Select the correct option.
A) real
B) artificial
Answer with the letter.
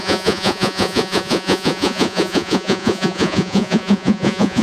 B